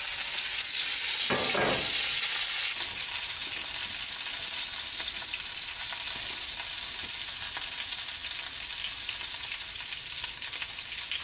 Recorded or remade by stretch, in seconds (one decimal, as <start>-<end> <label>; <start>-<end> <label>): 0.0-11.2 recorded